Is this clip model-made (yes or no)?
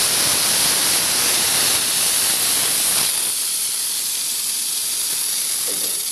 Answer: no